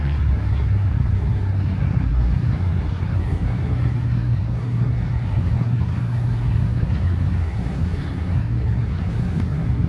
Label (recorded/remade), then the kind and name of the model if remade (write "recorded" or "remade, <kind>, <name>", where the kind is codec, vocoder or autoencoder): remade, codec, SNAC